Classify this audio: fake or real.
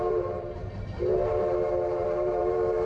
fake